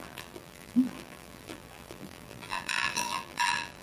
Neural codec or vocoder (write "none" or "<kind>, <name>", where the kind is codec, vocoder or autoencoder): vocoder, BigVGAN v2